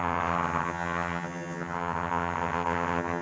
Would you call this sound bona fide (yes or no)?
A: no